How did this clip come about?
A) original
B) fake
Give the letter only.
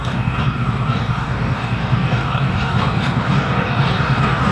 B